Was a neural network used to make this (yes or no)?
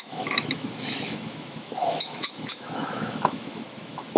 yes